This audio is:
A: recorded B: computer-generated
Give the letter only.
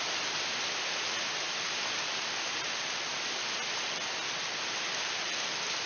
A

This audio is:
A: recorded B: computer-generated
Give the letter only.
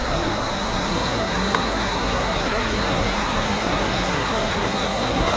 B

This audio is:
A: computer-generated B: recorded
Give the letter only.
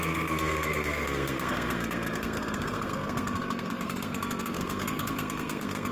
A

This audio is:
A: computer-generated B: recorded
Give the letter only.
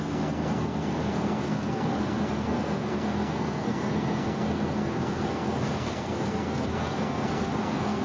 A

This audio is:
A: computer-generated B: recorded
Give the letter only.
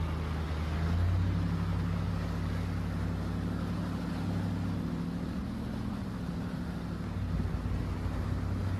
B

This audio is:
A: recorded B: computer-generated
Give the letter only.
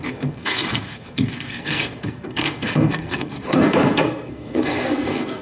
B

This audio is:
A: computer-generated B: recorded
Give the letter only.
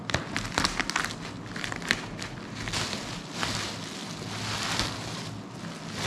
B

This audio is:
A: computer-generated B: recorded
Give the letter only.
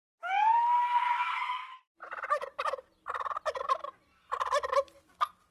B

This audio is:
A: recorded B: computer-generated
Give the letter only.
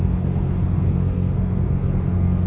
B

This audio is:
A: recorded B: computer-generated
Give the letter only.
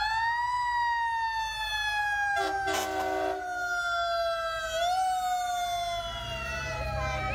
A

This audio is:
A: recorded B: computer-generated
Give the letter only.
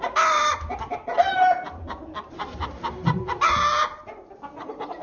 A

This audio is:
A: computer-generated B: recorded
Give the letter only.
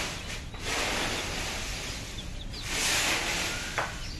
B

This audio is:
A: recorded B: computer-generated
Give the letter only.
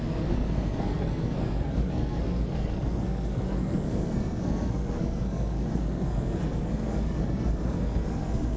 B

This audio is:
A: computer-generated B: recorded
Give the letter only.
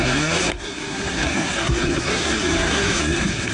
A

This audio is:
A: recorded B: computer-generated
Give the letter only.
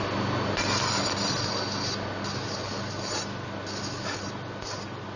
A